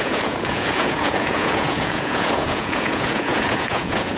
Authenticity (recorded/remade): remade